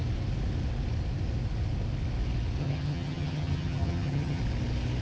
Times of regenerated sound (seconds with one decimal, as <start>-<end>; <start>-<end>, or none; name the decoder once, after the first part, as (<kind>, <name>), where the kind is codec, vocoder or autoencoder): 2.6-4.4 (vocoder, HiFi-GAN)